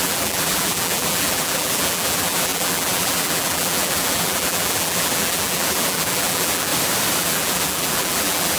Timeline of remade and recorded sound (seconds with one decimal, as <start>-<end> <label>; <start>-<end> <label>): 0.0-6.7 remade; 6.7-7.2 recorded; 7.2-8.6 remade